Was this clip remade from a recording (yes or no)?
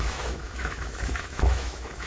yes